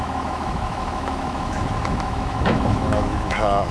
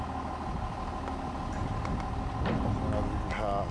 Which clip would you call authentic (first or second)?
second